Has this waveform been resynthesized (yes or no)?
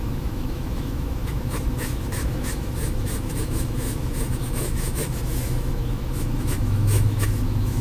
yes